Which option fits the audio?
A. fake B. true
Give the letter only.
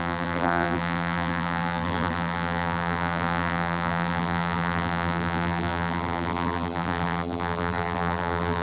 A